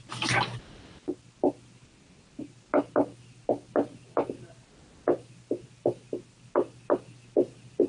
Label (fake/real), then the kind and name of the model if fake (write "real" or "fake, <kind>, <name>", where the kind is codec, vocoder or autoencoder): real